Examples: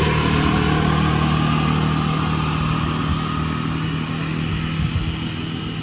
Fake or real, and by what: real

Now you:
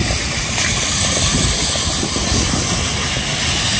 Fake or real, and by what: real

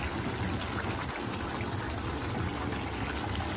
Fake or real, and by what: real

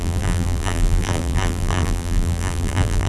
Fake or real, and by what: fake, vocoder, BigVGAN v2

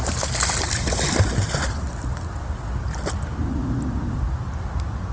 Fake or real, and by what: real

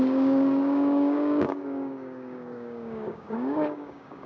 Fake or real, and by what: fake, codec, DAC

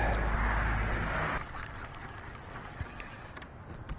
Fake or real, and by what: real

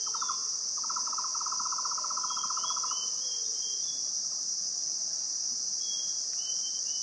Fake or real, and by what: real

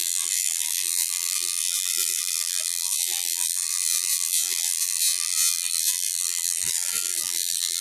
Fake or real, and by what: fake, vocoder, BigVGAN v2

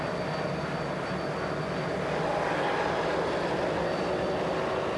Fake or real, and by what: real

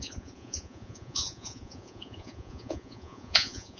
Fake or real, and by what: fake, vocoder, Vocos